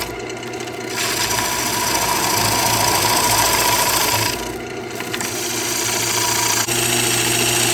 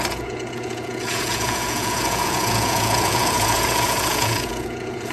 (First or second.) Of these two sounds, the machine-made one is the second